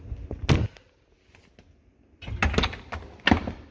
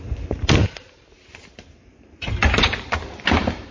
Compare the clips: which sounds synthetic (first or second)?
second